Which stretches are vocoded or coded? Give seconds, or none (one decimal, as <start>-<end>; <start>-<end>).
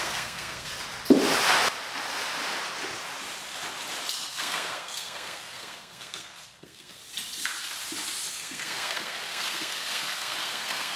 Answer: 0.0-0.7; 4.3-7.0; 8.3-11.0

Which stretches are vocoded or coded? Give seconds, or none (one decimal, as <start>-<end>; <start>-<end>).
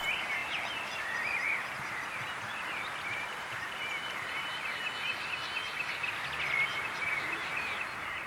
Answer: 0.4-4.7; 6.7-8.3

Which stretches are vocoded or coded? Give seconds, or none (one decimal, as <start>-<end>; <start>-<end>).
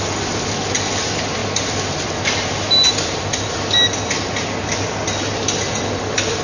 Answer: none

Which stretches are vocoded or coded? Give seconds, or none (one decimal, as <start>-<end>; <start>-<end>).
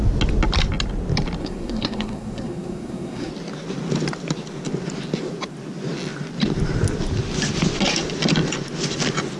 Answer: 1.4-3.3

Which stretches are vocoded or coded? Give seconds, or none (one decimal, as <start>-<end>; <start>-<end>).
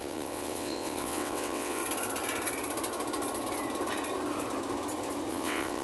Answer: 0.0-1.8; 5.3-5.8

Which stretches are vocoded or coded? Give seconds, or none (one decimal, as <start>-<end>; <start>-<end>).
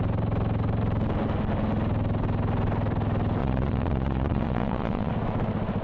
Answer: 3.4-5.1